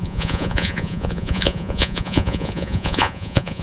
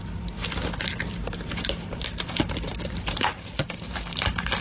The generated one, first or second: first